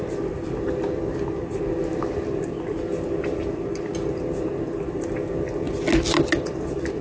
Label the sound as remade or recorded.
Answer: recorded